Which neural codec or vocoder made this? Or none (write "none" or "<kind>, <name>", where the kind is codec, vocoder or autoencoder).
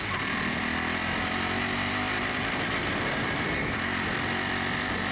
vocoder, BigVGAN v2